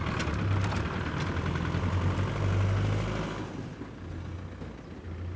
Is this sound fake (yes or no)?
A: no